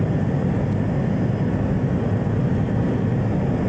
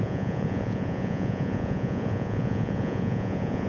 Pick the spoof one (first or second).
second